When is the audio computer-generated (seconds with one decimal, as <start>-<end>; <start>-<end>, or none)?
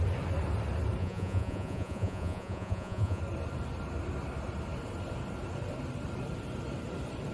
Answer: 1.0-3.2